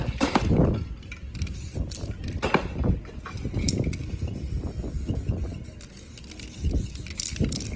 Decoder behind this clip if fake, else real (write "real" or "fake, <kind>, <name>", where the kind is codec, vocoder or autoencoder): real